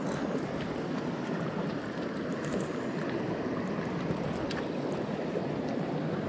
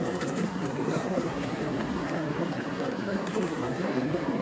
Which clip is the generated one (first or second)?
second